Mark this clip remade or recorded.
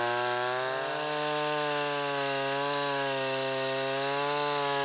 recorded